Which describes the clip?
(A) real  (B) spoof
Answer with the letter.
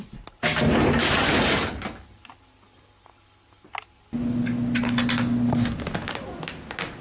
A